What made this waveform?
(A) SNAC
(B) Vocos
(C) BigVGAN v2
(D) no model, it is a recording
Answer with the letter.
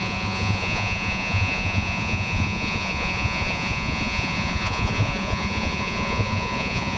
B